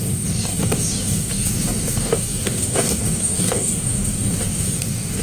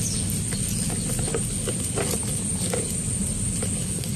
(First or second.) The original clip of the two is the second